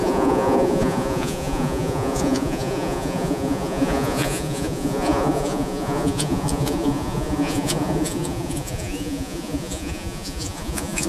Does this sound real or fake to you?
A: fake